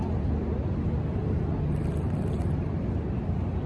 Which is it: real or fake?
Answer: real